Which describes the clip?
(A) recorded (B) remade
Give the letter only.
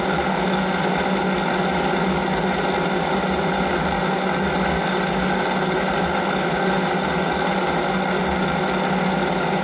A